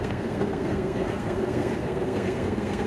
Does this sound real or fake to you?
fake